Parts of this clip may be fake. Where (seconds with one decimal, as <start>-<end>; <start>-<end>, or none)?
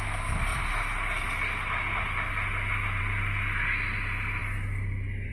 none